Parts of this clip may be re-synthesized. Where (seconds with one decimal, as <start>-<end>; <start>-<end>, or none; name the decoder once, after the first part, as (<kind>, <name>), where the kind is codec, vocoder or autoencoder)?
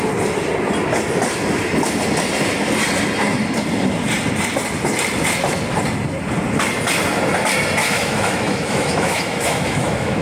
7.8-10.2 (autoencoder, DAC-VAE)